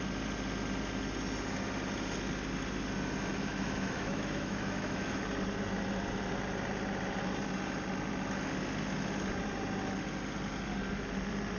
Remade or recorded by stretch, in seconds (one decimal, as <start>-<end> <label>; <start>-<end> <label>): 0.0-3.3 recorded; 3.3-5.2 remade; 5.2-11.6 recorded